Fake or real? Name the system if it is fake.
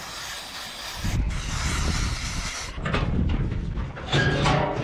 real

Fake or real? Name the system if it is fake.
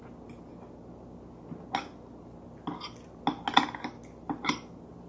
real